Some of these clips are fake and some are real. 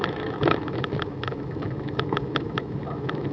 fake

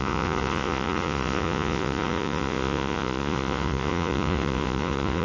fake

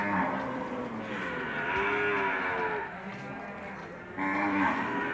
real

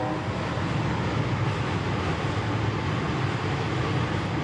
real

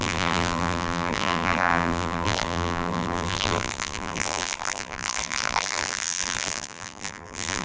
fake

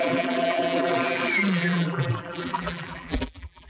fake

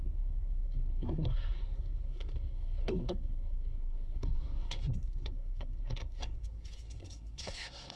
fake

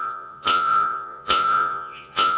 fake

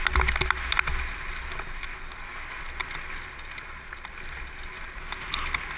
real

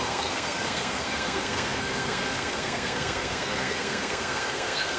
fake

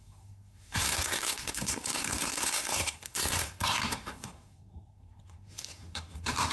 fake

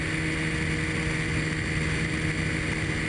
real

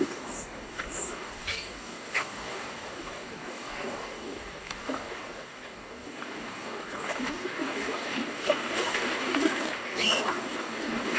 fake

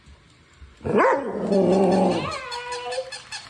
real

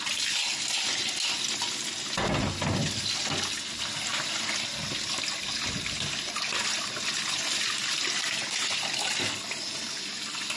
real